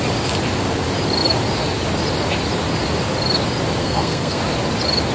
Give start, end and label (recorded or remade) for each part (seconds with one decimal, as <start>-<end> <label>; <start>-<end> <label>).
0.0-3.8 recorded; 3.8-4.4 remade; 4.4-5.1 recorded